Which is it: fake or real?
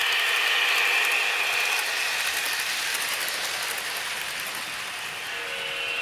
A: real